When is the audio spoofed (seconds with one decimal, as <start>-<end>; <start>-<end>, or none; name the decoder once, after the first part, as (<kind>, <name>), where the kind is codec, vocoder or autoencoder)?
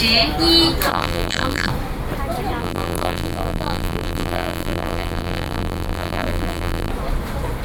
0.9-1.7 (vocoder, BigVGAN v2); 2.6-6.9